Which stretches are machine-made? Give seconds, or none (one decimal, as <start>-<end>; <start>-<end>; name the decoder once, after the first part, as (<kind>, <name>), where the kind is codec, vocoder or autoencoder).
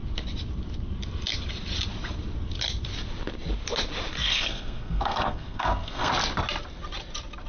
4.2-6.1 (codec, SNAC)